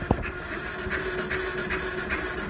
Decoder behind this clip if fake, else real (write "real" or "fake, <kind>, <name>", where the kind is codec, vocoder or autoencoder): real